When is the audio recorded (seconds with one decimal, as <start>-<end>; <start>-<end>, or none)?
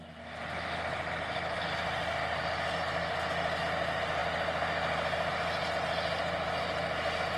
0.0-7.4